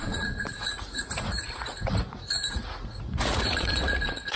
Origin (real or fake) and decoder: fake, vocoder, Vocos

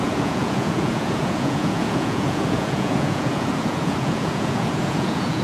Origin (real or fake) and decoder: fake, vocoder, Vocos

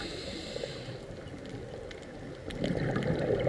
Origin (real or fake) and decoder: real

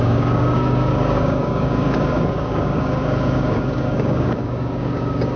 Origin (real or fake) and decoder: fake, codec, DAC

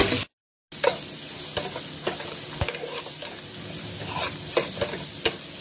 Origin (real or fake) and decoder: real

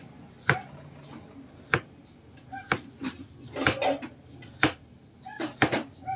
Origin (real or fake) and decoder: real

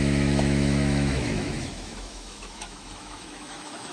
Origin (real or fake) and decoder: fake, autoencoder, DAC-VAE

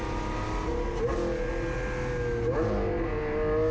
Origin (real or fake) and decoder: real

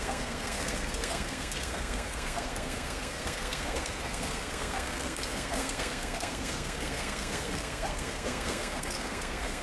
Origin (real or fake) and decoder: fake, codec, SNAC